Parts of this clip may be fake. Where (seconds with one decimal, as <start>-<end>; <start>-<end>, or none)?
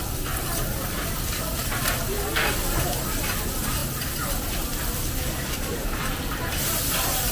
none